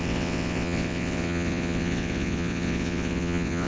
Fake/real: fake